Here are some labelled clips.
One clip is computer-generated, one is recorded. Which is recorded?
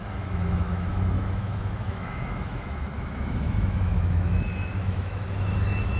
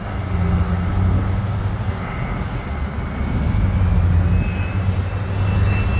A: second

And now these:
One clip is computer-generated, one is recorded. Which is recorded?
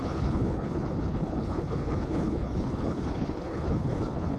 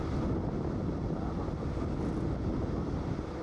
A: second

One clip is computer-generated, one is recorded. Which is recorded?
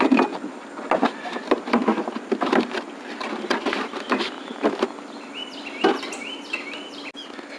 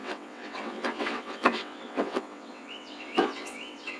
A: first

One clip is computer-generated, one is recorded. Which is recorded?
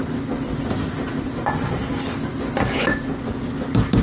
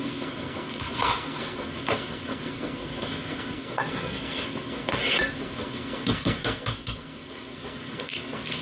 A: first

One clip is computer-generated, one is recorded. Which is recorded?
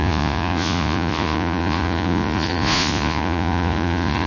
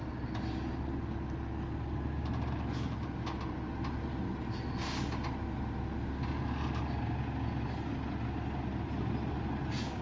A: second